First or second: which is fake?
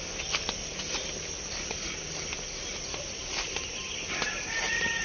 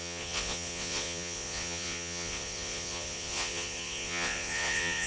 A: second